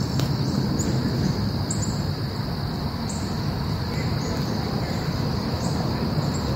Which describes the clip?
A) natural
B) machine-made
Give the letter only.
A